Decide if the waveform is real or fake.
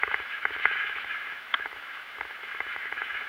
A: fake